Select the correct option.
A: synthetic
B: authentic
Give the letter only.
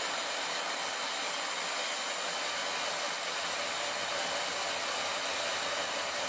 B